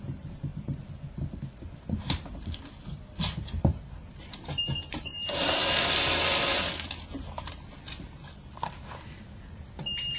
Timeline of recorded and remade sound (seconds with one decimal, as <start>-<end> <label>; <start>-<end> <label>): 0.0-5.6 remade; 5.6-9.2 recorded; 9.2-10.2 remade